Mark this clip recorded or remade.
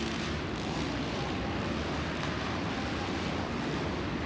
remade